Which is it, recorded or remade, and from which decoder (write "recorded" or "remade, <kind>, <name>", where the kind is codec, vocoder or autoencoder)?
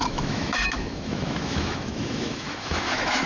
remade, autoencoder, DAC-VAE